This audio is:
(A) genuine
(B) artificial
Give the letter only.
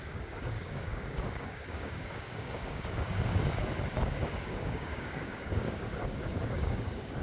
B